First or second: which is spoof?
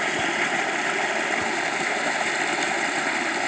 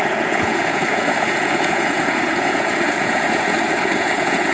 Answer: second